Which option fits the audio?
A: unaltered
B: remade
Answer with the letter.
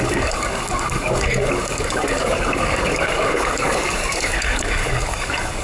B